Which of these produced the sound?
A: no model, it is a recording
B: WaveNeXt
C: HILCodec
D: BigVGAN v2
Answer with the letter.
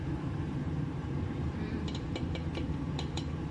D